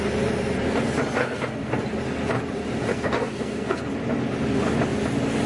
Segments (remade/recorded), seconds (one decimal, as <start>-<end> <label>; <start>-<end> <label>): 0.0-1.2 recorded; 1.2-1.8 remade; 1.8-2.9 recorded; 2.9-3.9 remade; 3.9-5.5 recorded